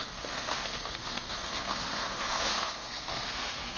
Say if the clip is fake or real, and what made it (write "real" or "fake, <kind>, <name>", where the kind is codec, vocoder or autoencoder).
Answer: fake, codec, SNAC